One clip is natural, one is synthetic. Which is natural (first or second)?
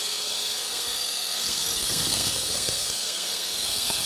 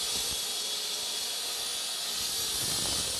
second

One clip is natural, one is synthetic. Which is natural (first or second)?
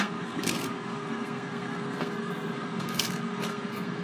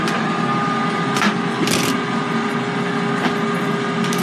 second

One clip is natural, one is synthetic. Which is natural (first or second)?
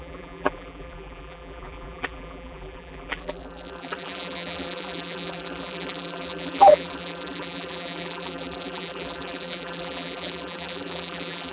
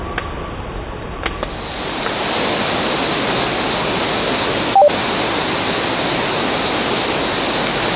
second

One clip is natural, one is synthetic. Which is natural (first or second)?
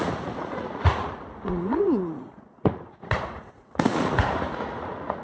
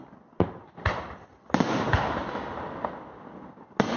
second